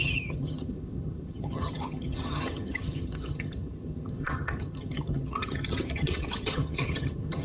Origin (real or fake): fake